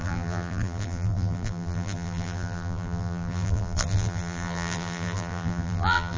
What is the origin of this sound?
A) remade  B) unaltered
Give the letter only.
A